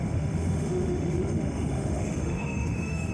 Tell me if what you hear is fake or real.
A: fake